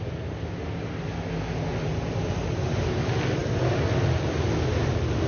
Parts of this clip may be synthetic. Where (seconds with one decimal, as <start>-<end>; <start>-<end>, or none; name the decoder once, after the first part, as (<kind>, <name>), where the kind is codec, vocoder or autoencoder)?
1.7-2.3 (vocoder, BigVGAN v2)